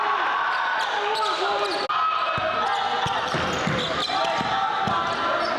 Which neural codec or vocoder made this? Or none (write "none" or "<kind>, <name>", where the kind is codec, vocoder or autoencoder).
none